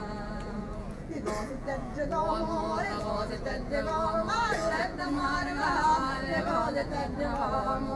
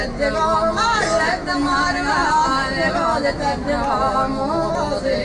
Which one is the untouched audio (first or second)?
second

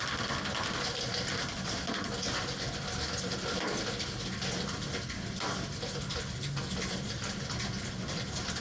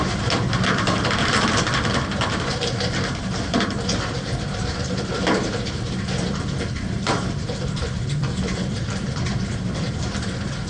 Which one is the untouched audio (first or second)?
first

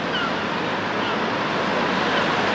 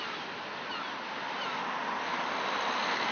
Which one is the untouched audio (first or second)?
second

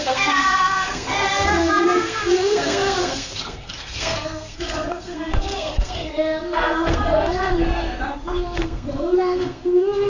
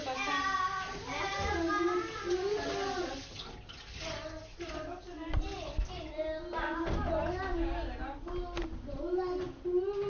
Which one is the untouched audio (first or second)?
second